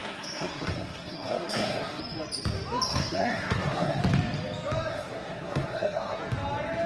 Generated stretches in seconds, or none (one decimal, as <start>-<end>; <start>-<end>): 0.0-2.0; 2.9-4.0; 4.9-6.2